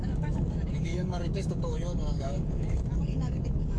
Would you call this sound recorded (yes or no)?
no